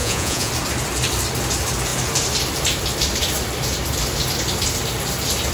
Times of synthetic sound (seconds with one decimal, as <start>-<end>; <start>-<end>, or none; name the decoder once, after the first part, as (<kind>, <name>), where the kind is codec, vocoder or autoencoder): 0.0-0.5 (vocoder, Vocos)